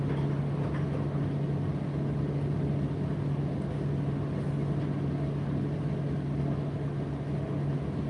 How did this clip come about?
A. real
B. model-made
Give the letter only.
A